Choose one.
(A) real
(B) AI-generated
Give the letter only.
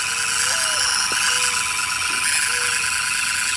A